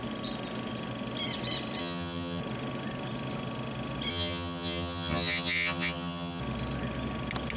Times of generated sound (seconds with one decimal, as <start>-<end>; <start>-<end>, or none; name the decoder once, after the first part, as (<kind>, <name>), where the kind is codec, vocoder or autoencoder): 1.8-2.4 (vocoder, HiFi-GAN); 4.1-6.4